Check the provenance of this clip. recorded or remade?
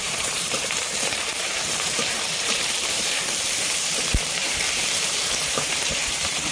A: remade